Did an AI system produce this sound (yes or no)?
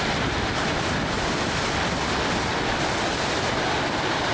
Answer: no